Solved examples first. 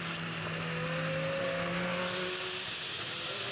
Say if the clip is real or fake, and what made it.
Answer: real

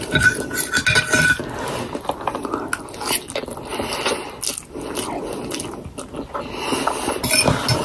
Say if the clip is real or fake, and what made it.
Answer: real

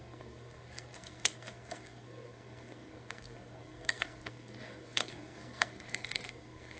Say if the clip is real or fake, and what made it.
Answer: fake, codec, SNAC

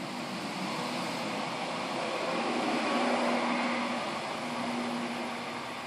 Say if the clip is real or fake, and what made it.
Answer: real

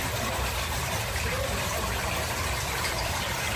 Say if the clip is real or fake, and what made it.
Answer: real